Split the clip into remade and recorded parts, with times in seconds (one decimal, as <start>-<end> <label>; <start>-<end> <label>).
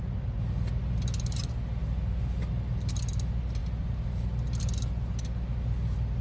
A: 0.0-6.2 recorded